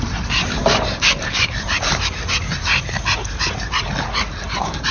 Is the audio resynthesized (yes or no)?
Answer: yes